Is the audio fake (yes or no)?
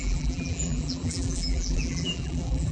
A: yes